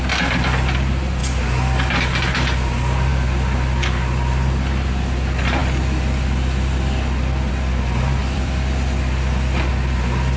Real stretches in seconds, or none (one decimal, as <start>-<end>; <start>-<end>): 0.0-8.2; 9.7-10.4